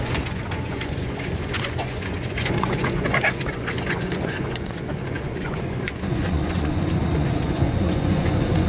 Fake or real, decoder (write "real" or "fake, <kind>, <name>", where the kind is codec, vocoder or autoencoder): fake, vocoder, Vocos